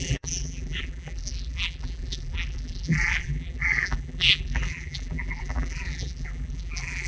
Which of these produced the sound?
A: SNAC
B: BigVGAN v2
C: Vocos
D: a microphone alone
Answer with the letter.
B